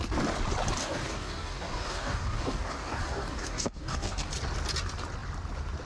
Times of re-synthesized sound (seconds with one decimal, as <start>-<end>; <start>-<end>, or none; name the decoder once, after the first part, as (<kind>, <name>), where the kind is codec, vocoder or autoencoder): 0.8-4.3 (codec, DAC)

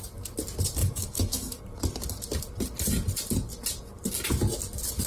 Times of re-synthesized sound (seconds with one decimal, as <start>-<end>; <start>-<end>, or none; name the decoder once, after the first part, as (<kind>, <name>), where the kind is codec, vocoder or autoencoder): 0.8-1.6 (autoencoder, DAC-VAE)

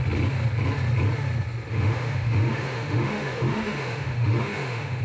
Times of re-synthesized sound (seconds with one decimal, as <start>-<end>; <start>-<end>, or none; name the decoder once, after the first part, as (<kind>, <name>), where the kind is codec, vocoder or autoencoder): 1.7-5.0 (autoencoder, DAC-VAE)